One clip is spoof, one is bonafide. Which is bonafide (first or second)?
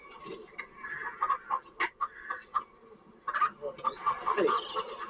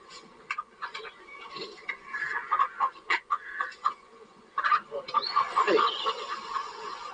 first